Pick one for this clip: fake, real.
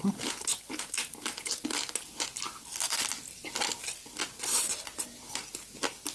real